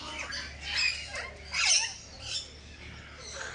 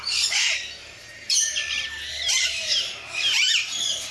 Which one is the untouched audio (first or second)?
first